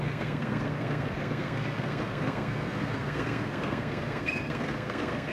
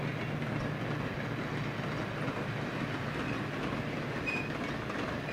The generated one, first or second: first